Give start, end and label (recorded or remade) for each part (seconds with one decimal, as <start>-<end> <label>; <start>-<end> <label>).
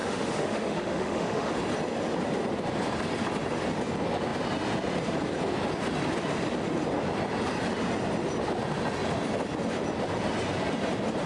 0.0-1.5 remade; 1.5-11.3 recorded